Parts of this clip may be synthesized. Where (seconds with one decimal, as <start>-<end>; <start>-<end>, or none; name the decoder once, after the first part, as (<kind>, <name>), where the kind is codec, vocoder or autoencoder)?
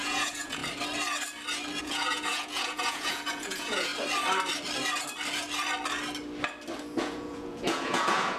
0.0-0.6 (vocoder, Vocos); 1.8-3.9; 7.0-8.4